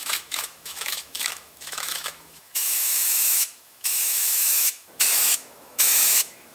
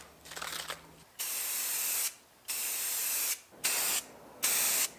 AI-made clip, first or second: first